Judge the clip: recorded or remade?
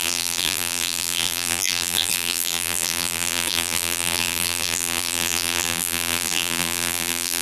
remade